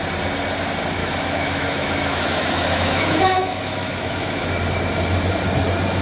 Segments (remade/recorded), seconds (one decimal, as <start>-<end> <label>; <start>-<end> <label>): 0.0-1.0 recorded; 1.0-4.5 remade; 4.5-6.0 recorded